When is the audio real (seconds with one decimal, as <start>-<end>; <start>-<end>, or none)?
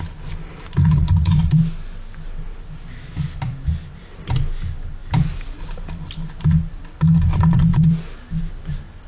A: 0.0-0.8; 1.5-9.1